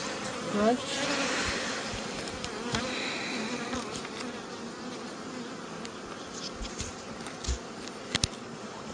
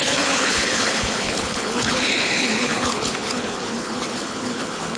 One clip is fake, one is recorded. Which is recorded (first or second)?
first